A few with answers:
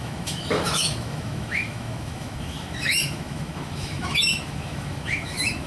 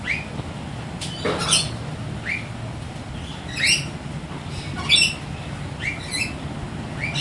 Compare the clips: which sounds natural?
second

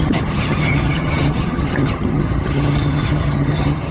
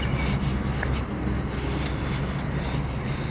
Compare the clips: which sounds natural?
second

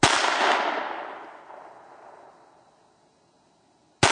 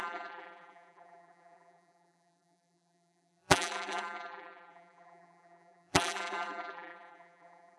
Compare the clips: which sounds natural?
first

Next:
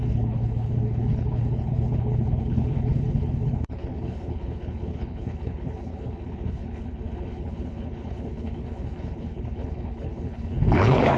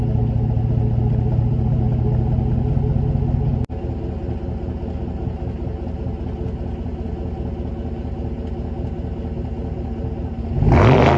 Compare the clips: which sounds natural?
second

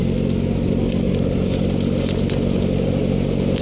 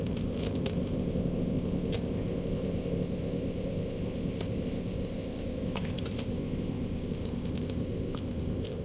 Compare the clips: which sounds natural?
first